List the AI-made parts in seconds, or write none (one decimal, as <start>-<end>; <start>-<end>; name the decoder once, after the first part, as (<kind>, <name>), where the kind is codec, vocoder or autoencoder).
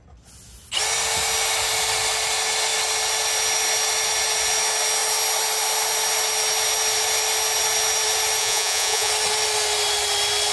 8.4-9.1 (vocoder, Vocos)